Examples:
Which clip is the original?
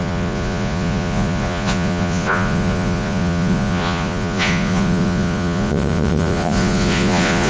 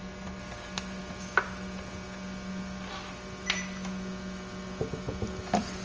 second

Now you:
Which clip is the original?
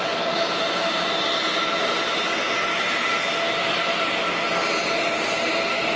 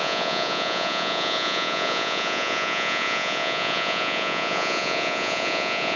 first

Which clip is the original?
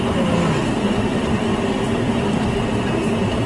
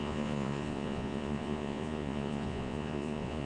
first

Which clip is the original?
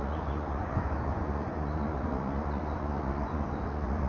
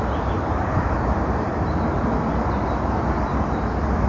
second